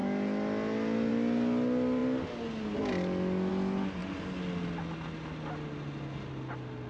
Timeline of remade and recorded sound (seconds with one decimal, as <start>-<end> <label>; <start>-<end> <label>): 0.0-6.9 recorded

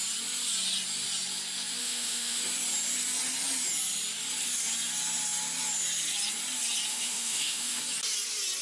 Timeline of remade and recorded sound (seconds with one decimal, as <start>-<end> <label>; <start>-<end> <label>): 0.0-1.8 recorded; 1.8-2.4 remade; 2.4-6.9 recorded; 6.9-7.8 remade; 7.8-8.6 recorded

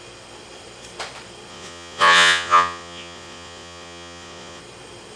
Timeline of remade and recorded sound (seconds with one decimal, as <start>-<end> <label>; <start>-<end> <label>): 0.0-1.5 recorded; 1.5-4.6 remade; 4.6-5.2 recorded

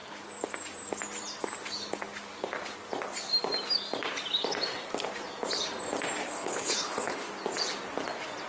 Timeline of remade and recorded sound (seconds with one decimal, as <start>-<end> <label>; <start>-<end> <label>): 0.0-6.2 recorded; 6.2-7.3 remade; 7.3-8.5 recorded

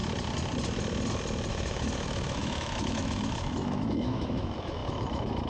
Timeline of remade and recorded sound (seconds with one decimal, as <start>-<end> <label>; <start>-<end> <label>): 0.0-1.5 recorded; 1.5-5.5 remade

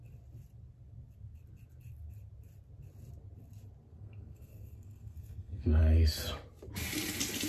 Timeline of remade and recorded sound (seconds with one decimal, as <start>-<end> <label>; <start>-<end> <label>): 0.0-3.9 recorded; 3.9-5.8 remade; 5.8-7.5 recorded

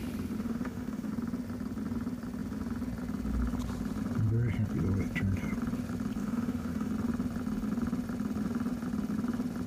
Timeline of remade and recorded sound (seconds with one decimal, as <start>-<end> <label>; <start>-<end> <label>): 0.0-0.4 recorded; 0.4-1.1 remade; 1.1-6.2 recorded; 6.2-6.9 remade; 6.9-9.7 recorded

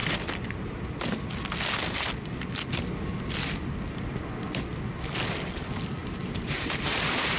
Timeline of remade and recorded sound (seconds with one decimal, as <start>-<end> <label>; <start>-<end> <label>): 0.0-6.0 recorded; 6.0-7.4 remade